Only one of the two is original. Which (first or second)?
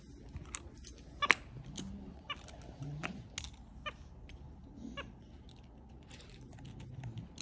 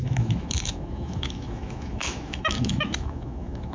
first